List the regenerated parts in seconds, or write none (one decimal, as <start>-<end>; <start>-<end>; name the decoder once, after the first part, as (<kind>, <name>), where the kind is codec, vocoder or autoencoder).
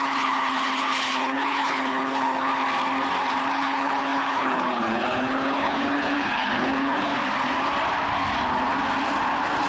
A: 0.0-2.5 (codec, HILCodec); 3.5-7.1